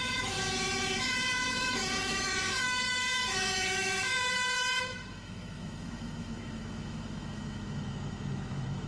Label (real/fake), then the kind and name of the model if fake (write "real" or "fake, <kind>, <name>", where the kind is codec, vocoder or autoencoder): fake, autoencoder, DAC-VAE